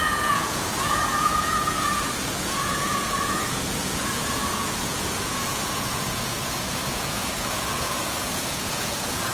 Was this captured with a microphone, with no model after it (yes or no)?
no